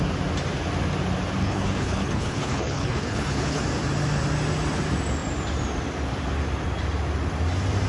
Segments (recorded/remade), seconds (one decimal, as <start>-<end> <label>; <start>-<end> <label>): 0.0-1.4 recorded; 1.4-3.6 remade; 3.6-7.9 recorded